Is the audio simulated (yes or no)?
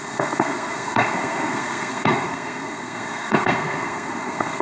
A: yes